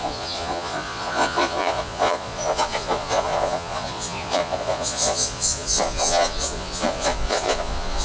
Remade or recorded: remade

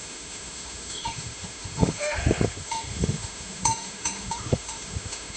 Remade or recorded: remade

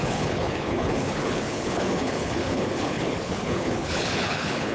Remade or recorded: remade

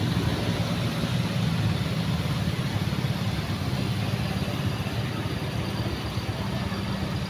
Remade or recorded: recorded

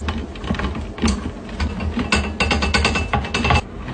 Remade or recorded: recorded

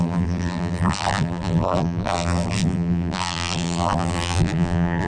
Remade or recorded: remade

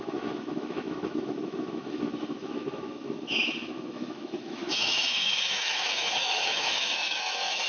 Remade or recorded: remade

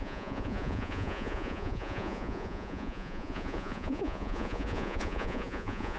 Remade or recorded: remade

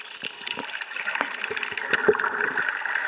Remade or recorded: recorded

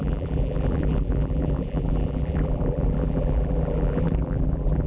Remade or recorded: remade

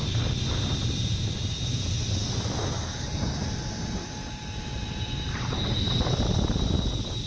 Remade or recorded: recorded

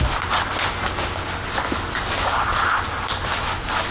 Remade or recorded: recorded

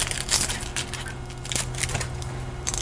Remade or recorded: recorded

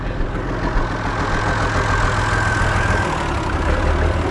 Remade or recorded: recorded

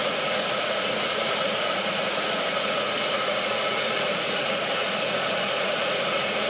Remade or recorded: remade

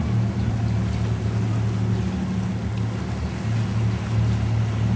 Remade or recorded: recorded